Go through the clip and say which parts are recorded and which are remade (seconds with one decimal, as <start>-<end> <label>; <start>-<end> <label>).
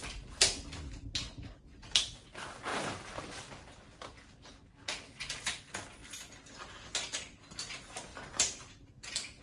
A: 0.0-2.7 recorded; 2.7-3.2 remade; 3.2-8.1 recorded; 8.1-9.4 remade